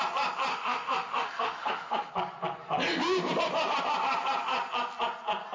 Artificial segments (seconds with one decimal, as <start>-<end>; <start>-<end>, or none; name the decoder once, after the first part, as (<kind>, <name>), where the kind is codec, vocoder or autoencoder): 0.5-2.1 (autoencoder, DAC-VAE)